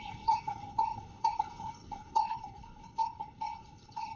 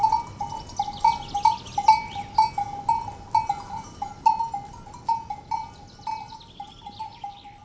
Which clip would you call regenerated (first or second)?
first